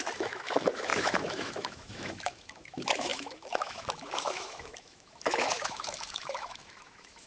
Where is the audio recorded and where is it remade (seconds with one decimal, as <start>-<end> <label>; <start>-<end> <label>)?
0.0-7.3 remade